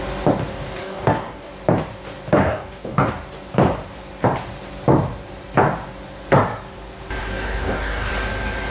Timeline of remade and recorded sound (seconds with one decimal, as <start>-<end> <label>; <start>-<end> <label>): 0.0-0.5 recorded; 0.5-1.5 remade; 1.5-2.4 recorded; 2.4-3.1 remade; 3.1-7.2 recorded; 7.2-8.1 remade; 8.1-8.7 recorded